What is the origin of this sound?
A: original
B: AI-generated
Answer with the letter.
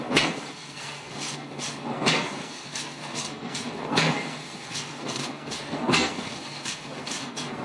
B